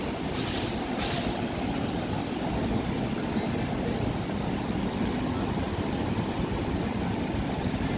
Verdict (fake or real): real